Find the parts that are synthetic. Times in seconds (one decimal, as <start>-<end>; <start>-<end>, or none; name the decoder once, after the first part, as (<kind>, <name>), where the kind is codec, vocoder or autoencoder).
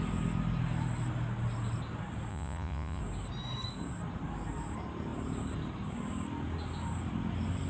2.3-3.0 (vocoder, Vocos)